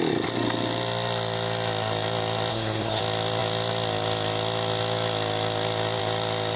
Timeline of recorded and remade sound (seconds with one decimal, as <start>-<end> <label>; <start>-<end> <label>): 0.0-2.5 recorded; 2.5-3.0 remade; 3.0-6.6 recorded